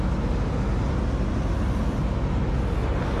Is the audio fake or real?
real